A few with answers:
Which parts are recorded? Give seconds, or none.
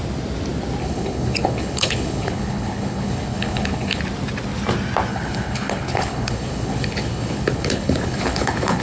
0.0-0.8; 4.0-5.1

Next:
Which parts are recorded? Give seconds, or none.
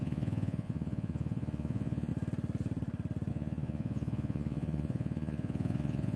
2.1-3.3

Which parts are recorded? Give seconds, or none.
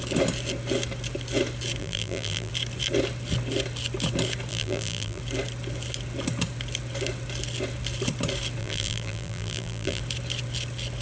0.0-1.8; 2.5-4.5; 5.2-8.6; 10.0-11.0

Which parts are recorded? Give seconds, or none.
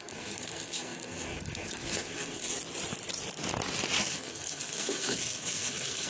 2.5-4.0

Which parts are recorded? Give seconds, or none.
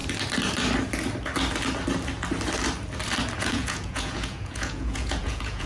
0.0-3.4